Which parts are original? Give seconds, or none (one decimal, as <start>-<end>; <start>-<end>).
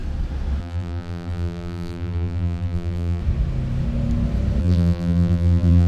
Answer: 0.0-0.6; 3.2-4.6